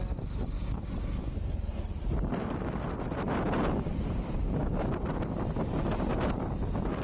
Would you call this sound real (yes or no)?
yes